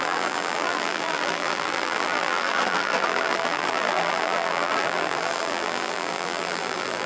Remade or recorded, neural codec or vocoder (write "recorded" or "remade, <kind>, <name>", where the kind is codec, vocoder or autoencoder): remade, vocoder, BigVGAN v2